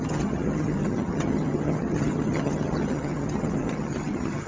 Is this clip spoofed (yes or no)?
yes